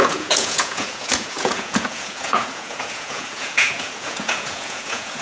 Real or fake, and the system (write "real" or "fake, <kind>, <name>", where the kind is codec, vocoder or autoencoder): fake, vocoder, Vocos